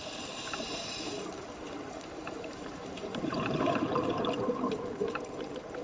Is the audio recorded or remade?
remade